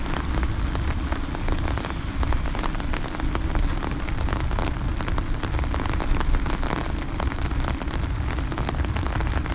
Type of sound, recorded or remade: recorded